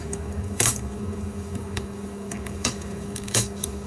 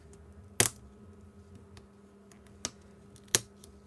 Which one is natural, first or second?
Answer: second